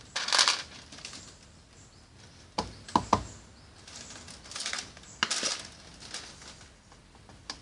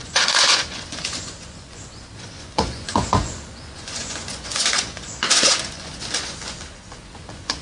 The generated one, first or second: second